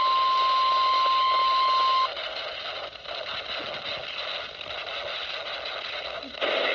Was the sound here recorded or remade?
recorded